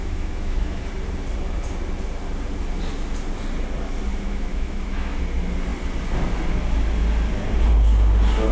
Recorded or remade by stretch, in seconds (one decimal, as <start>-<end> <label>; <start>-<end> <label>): 0.0-0.8 remade; 0.8-4.1 recorded; 4.1-5.2 remade; 5.2-8.5 recorded